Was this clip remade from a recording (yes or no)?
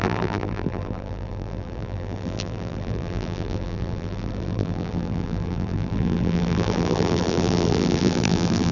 yes